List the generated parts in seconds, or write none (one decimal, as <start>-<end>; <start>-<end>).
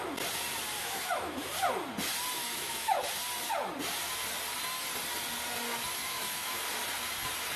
0.8-1.5; 2.4-3.1; 6.0-6.6